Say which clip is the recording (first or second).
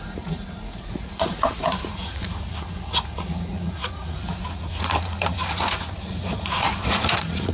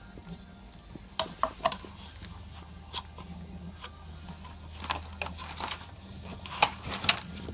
second